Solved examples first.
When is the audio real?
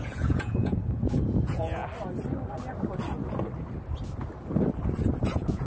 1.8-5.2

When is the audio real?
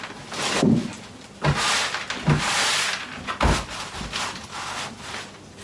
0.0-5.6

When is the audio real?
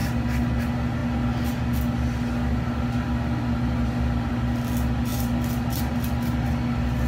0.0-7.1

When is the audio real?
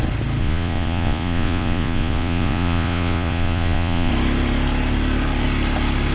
0.0-0.4; 4.1-6.1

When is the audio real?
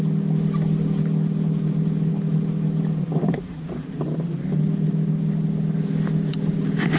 0.0-7.0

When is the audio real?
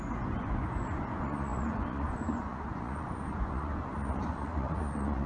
none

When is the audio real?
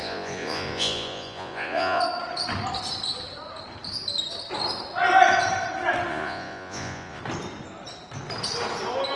2.0-6.1; 7.2-9.2